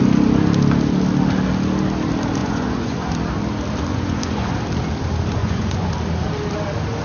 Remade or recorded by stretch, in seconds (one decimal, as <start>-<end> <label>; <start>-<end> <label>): 0.0-2.4 recorded; 2.4-3.1 remade; 3.1-3.9 recorded; 3.9-4.6 remade; 4.6-5.4 recorded; 5.4-5.9 remade; 5.9-7.0 recorded